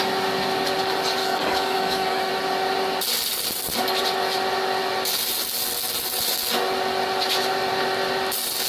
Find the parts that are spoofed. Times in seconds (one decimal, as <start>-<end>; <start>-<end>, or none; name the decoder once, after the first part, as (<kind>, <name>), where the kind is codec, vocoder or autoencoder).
1.2-2.3 (codec, DAC)